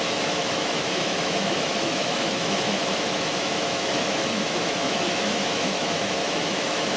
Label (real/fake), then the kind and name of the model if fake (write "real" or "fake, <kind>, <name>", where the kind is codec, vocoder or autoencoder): fake, autoencoder, DAC-VAE